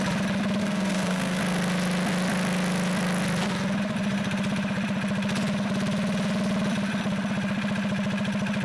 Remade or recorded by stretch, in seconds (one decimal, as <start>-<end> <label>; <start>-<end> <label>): 0.0-0.6 recorded; 0.6-1.4 remade; 1.4-8.6 recorded